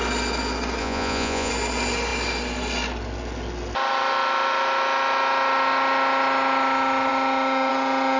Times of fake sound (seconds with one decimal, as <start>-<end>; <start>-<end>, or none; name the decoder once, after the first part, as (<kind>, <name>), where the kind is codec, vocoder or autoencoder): 0.8-1.5 (vocoder, Vocos)